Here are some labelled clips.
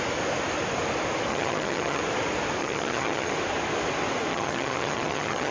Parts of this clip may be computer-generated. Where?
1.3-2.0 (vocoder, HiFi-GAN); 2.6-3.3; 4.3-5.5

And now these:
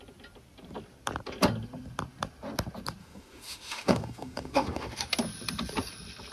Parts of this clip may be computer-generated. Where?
3.0-5.1 (autoencoder, DAC-VAE)

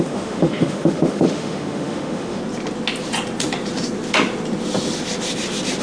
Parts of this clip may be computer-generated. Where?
0.0-2.4 (autoencoder, DAC-VAE)

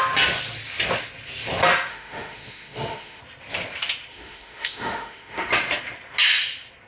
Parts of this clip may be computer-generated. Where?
1.9-3.2 (autoencoder, DAC-VAE); 4.1-5.5

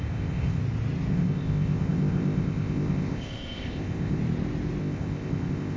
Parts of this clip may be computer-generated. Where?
0.0-0.6 (codec, ZipCodec); 1.1-4.2; 4.8-5.8

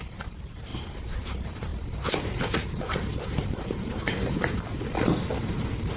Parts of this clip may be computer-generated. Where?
0.0-6.0 (vocoder, BigVGAN v2)